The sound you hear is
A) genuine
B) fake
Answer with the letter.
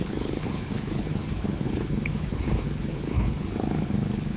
B